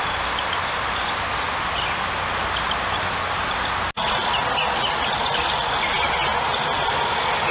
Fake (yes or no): no